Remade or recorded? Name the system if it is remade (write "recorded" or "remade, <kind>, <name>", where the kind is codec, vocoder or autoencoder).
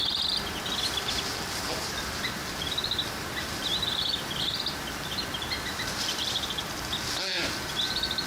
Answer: remade, vocoder, BigVGAN v2